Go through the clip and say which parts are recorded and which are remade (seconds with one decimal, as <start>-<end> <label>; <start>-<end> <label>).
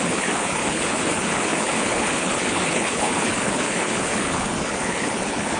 0.0-5.6 remade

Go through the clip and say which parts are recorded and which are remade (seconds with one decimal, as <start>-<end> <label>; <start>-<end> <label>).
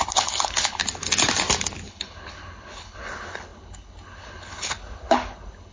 0.0-0.8 remade; 0.8-1.9 recorded; 1.9-5.7 remade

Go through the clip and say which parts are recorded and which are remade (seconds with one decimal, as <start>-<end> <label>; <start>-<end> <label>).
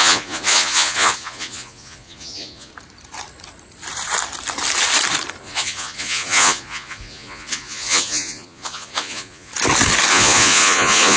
0.0-2.7 remade; 2.7-5.4 recorded; 5.4-9.5 remade; 9.5-10.1 recorded; 10.1-11.2 remade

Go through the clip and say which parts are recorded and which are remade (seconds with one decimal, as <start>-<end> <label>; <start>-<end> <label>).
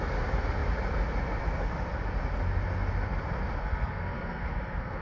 0.0-3.6 recorded; 3.6-5.0 remade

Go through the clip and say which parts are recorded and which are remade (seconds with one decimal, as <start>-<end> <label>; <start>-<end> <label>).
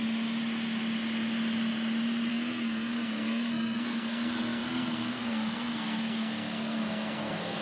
0.0-2.3 recorded; 2.3-7.6 remade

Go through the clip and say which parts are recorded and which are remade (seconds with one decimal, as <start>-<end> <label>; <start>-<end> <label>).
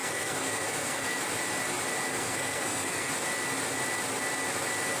0.0-1.2 remade; 1.2-2.1 recorded; 2.1-3.1 remade; 3.1-5.0 recorded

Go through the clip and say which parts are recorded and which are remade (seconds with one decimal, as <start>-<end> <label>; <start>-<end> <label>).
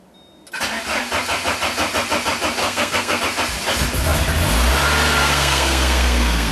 0.0-2.6 recorded; 2.6-3.2 remade; 3.2-5.2 recorded; 5.2-6.5 remade